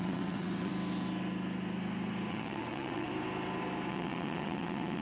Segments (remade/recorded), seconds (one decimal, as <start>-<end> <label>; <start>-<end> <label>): 0.0-0.7 remade; 0.7-2.3 recorded; 2.3-3.1 remade; 3.1-3.9 recorded; 3.9-5.0 remade